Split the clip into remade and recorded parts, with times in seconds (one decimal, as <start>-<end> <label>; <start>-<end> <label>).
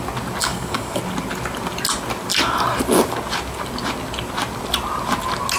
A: 0.0-0.4 recorded; 0.4-1.0 remade; 1.0-5.6 recorded